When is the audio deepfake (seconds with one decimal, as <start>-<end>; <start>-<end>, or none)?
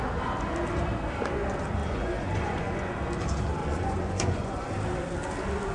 1.8-3.0; 3.6-4.7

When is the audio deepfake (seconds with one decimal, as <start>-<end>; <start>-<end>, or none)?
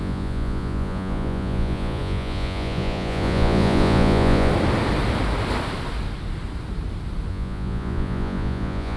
0.0-4.5; 7.3-9.0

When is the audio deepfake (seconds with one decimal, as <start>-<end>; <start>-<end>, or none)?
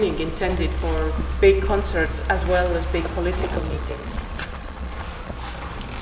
3.4-5.3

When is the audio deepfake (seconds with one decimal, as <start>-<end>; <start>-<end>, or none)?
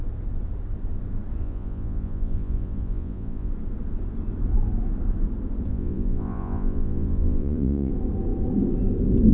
1.4-3.5; 5.7-7.9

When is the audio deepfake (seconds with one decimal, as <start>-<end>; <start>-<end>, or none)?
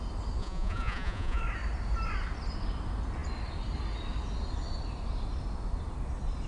0.4-1.4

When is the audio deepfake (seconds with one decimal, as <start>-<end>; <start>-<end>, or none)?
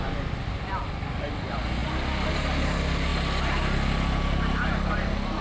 none